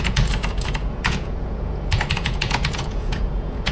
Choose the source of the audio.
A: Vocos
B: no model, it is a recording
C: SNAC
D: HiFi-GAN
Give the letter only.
A